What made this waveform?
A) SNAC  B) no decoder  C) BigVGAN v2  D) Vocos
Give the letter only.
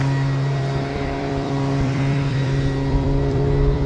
C